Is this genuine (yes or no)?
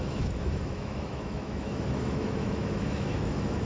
no